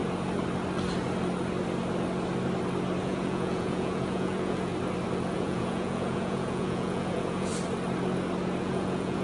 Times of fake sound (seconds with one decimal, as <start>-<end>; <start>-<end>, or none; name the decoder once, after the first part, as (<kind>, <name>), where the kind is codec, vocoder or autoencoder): 3.0-4.7 (vocoder, Vocos); 5.3-7.5; 8.6-9.2